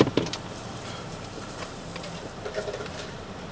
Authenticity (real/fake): fake